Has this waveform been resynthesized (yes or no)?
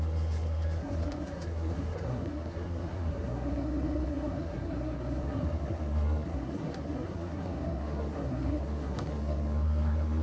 yes